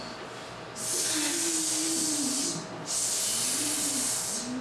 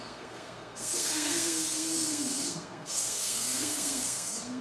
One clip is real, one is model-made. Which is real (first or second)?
first